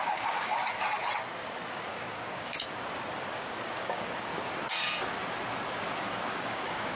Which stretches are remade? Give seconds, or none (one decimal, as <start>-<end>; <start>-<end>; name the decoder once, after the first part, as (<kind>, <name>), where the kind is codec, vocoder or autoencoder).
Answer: 0.0-0.6 (codec, DAC); 1.7-2.5; 3.3-4.3; 5.7-7.0